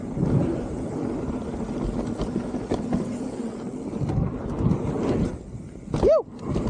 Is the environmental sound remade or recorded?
recorded